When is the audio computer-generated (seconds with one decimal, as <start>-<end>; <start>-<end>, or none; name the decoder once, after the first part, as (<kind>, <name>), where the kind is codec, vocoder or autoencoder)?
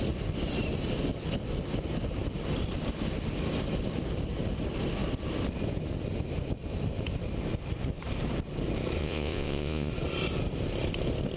9.0-9.9 (vocoder, Vocos)